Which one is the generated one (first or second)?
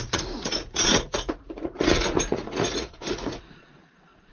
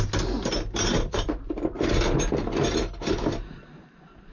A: first